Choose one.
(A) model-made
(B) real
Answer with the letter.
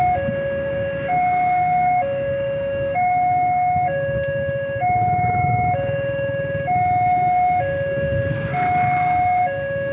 A